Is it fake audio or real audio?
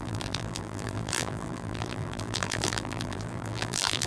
fake